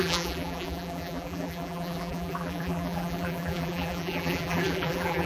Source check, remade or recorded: remade